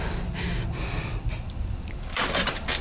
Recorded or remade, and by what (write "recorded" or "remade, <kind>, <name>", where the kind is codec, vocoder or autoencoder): recorded